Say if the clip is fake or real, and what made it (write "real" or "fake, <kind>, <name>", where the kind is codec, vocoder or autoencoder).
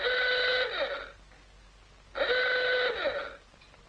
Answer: real